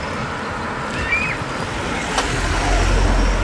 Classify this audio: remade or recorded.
recorded